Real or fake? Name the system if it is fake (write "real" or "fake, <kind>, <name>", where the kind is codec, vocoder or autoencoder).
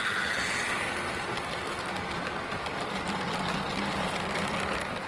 real